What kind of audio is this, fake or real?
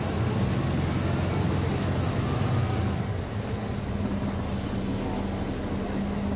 real